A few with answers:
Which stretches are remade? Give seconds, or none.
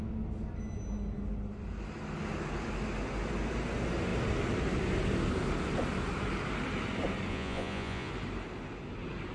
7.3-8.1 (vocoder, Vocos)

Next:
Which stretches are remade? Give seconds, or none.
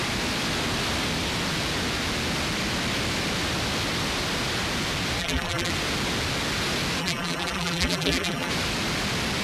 5.2-5.7 (vocoder, BigVGAN v2); 7.0-8.5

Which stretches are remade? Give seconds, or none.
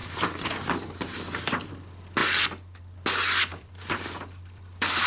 0.0-1.7 (vocoder, BigVGAN v2); 3.5-5.1